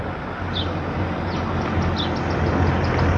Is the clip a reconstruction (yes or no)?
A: no